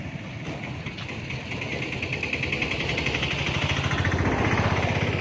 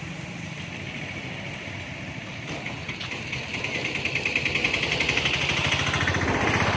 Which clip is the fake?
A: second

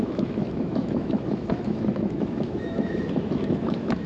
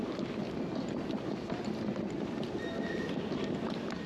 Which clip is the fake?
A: first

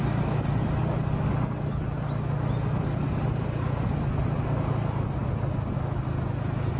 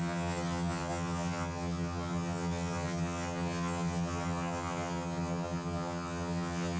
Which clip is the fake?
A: second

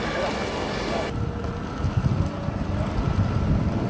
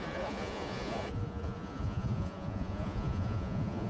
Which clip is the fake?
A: second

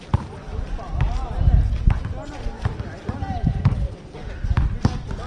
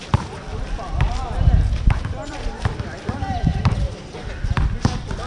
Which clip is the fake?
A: second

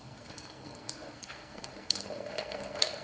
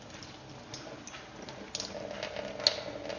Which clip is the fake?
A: first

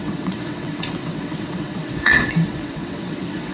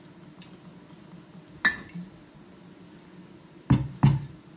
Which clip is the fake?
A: first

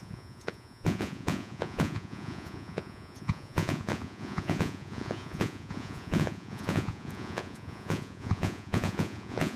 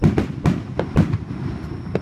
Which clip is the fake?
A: first